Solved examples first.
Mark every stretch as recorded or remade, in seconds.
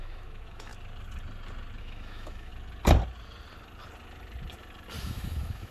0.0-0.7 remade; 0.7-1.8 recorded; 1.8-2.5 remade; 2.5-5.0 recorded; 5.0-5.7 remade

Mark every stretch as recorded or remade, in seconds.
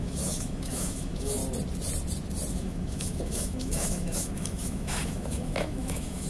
0.0-1.4 remade; 1.4-2.5 recorded; 2.5-6.3 remade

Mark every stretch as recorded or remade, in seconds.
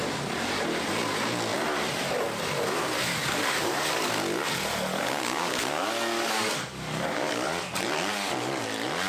0.0-3.1 recorded; 3.1-4.1 remade; 4.1-4.9 recorded; 4.9-7.7 remade; 7.7-9.1 recorded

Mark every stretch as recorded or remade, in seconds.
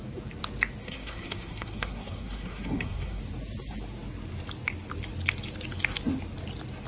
0.0-0.8 recorded; 0.8-3.2 remade; 3.2-6.9 recorded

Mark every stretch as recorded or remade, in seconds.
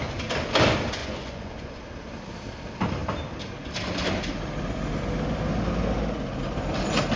0.0-1.0 recorded; 1.0-1.8 remade; 1.8-7.2 recorded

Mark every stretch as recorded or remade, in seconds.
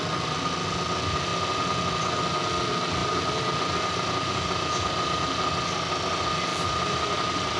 0.0-3.0 recorded; 3.0-5.5 remade; 5.5-6.5 recorded; 6.5-7.6 remade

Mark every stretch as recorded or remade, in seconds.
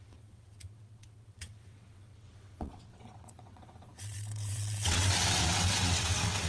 0.0-6.5 remade